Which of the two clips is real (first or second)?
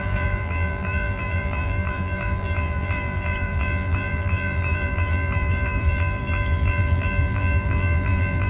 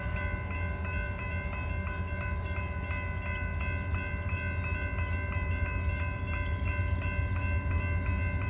second